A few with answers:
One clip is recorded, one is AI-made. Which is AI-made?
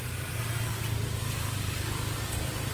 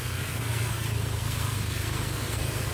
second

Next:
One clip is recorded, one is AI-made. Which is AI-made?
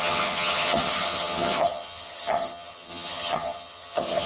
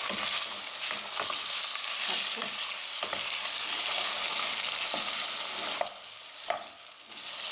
first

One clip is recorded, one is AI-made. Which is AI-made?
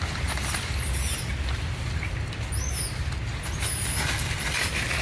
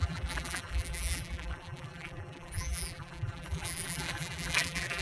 second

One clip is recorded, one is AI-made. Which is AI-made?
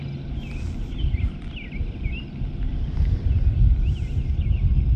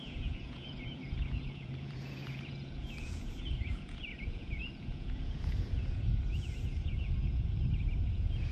second